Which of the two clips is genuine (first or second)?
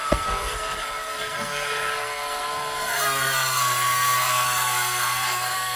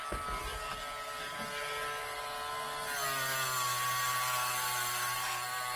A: second